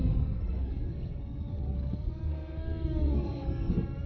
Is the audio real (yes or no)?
no